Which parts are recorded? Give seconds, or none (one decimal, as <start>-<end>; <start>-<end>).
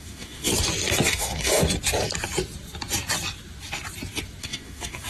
0.5-1.1; 1.6-4.4